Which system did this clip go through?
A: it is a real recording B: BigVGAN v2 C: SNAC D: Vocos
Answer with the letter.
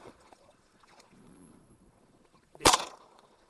D